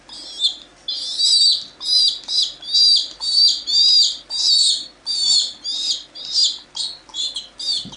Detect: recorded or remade recorded